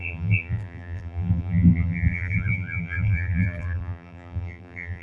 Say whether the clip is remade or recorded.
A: remade